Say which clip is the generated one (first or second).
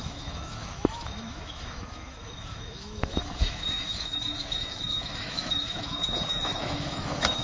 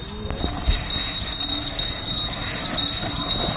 first